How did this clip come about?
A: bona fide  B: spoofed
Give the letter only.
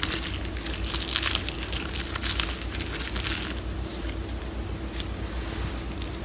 A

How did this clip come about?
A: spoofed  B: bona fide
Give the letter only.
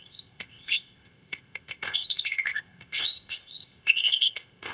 A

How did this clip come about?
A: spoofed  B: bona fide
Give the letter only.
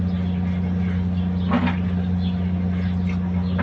B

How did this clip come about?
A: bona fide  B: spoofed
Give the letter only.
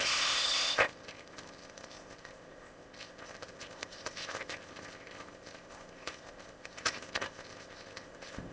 B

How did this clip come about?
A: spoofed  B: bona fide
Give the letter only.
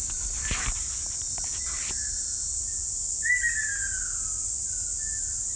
B